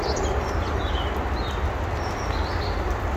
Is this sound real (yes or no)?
yes